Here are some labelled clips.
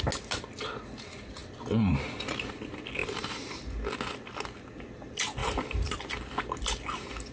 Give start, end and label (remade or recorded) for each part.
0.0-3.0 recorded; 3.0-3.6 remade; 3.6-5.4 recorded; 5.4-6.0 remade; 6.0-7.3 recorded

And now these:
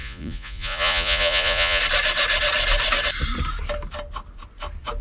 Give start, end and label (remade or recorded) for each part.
0.0-1.8 remade; 1.8-5.0 recorded

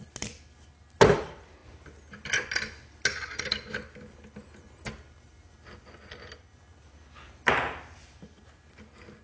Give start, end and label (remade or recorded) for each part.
0.0-9.2 recorded

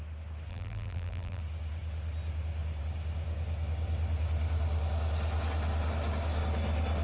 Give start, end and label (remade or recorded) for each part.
0.0-0.5 recorded; 0.5-1.4 remade; 1.4-7.0 recorded

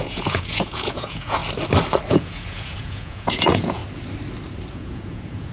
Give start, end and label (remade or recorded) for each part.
0.0-1.4 remade; 1.4-2.1 recorded; 2.1-3.8 remade; 3.8-4.7 recorded; 4.7-5.5 remade

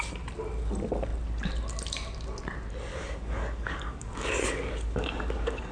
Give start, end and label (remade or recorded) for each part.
0.0-2.9 recorded; 2.9-5.7 remade

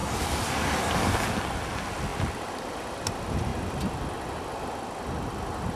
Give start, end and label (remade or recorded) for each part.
0.0-5.8 recorded